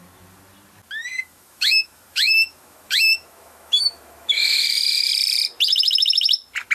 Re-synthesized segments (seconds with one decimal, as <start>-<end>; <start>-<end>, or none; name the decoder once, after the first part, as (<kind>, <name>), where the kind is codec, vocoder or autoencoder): 1.1-5.1 (autoencoder, DAC-VAE)